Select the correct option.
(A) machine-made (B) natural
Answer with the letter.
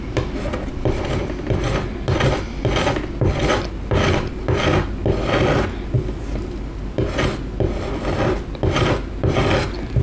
B